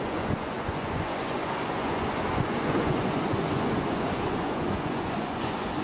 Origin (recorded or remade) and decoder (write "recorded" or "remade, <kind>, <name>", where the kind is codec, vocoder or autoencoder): remade, vocoder, Vocos